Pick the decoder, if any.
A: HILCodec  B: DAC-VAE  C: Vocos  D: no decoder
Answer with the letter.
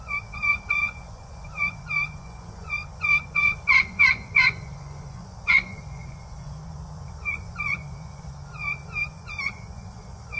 C